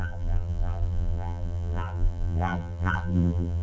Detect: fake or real fake